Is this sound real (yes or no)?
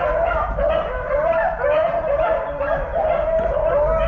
no